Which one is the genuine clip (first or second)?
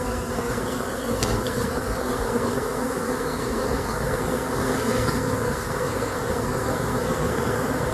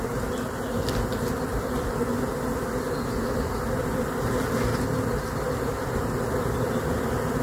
second